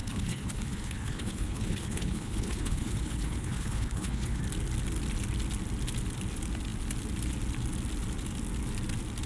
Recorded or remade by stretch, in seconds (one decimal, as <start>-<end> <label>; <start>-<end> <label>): 0.0-4.4 remade; 4.4-9.3 recorded